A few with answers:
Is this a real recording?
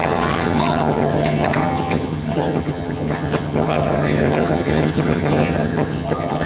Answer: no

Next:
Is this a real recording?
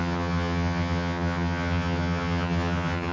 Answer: no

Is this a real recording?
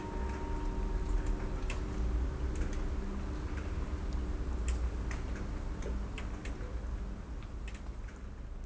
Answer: yes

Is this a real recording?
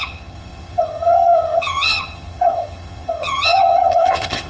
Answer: no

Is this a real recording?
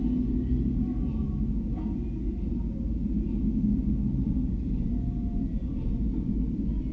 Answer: yes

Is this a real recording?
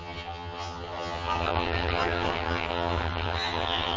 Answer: no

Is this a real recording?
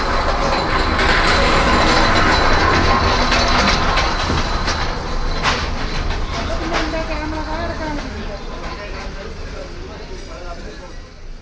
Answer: yes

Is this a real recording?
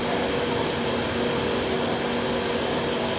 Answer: yes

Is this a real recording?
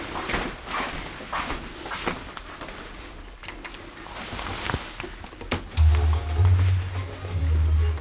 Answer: yes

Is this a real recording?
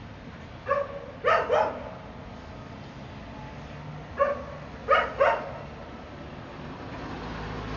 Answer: yes